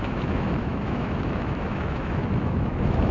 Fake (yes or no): yes